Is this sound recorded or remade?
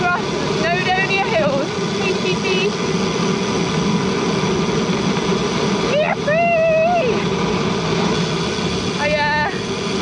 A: recorded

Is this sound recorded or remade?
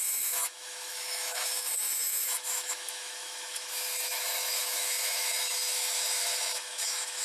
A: remade